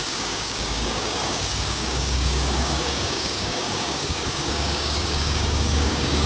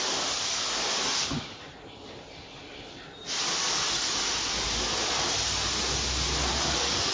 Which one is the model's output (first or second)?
first